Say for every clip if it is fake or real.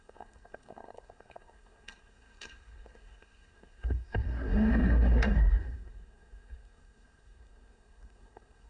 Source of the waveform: fake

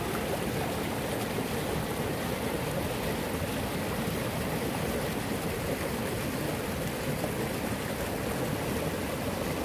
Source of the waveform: real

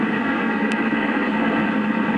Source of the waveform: fake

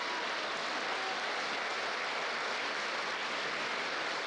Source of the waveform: real